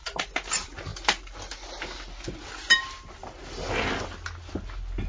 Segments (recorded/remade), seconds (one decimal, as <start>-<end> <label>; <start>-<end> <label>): 0.0-5.1 recorded